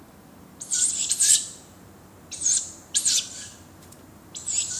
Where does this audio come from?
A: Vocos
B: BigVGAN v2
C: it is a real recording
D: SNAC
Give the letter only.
B